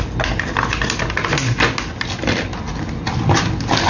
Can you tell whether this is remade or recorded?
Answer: recorded